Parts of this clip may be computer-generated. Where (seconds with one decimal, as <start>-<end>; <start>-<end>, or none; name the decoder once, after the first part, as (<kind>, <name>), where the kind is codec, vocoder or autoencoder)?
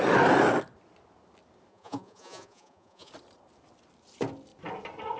1.7-3.1 (vocoder, Vocos)